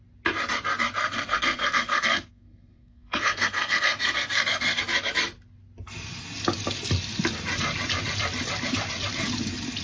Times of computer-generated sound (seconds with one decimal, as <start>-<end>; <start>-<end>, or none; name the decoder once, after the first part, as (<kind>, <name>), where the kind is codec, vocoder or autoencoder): 1.0-4.8 (codec, SNAC)